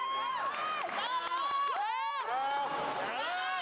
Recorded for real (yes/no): yes